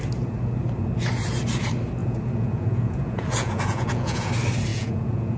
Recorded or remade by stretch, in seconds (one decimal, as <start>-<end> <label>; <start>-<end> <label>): 0.0-2.0 recorded; 2.0-4.3 remade; 4.3-4.7 recorded; 4.7-5.4 remade